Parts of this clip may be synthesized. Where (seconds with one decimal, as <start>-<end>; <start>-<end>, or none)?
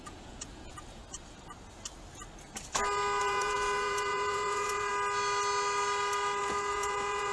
0.0-1.0; 3.2-4.9; 6.4-7.3